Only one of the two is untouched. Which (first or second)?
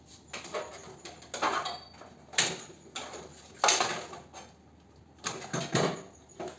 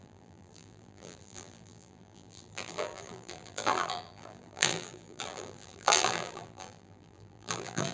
first